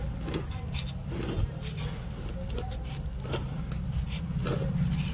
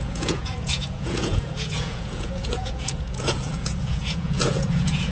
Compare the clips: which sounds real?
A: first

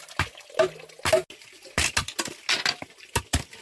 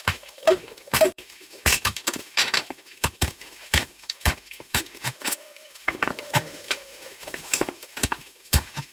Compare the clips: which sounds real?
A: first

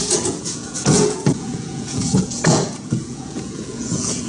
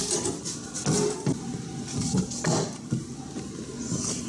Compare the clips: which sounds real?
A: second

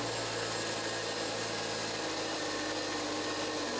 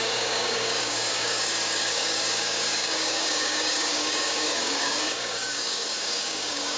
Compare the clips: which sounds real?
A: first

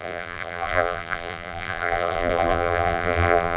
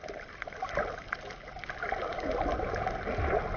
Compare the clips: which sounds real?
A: second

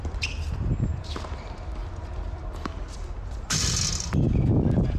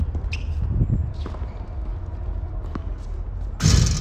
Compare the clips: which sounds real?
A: second